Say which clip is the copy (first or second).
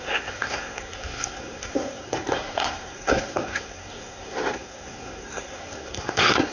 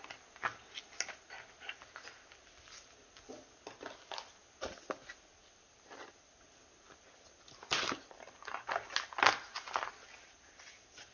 first